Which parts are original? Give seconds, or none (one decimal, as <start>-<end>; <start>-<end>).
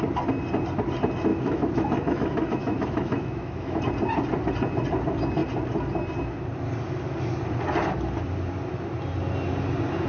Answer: 0.0-1.3; 3.8-10.1